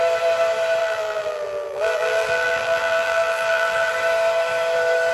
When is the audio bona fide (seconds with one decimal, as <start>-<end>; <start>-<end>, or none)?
0.0-0.8; 3.9-5.1